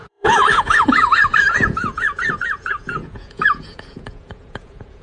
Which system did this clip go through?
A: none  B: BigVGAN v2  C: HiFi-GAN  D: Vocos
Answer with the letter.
D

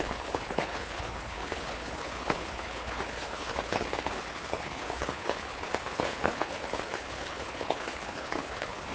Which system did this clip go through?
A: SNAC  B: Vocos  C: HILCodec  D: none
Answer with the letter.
C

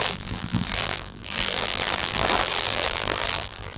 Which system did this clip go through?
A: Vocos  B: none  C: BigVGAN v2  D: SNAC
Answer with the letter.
C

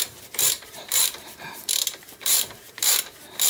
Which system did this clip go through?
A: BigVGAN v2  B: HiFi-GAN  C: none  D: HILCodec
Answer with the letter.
A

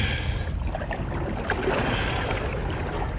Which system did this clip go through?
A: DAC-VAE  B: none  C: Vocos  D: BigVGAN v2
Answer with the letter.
B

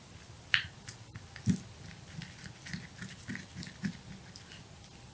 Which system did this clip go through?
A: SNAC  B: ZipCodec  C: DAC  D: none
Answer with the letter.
D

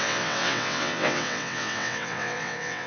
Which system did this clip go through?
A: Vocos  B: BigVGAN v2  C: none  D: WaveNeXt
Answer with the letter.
D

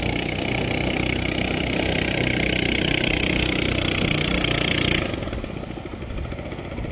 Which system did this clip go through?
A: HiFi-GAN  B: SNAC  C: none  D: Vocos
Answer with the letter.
C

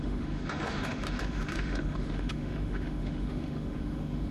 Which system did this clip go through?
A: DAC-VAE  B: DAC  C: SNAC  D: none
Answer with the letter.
A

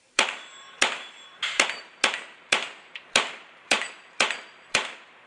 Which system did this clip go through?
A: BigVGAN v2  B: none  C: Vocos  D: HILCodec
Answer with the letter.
A